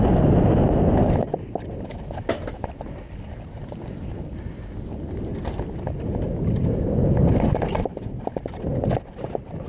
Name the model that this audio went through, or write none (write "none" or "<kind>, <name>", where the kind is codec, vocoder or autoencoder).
none